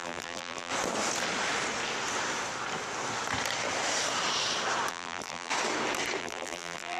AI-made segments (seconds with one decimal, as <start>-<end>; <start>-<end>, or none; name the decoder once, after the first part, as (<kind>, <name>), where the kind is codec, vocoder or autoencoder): 0.0-0.7 (vocoder, BigVGAN v2); 4.9-5.5; 6.2-7.0